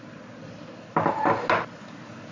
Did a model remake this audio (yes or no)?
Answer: no